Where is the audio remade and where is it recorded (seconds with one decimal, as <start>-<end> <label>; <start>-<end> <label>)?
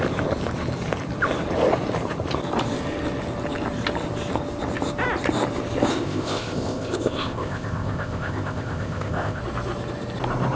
0.0-5.9 recorded; 5.9-9.4 remade; 9.4-10.6 recorded